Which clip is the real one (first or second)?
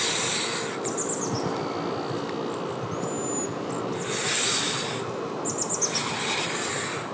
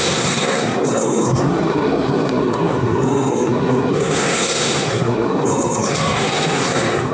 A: first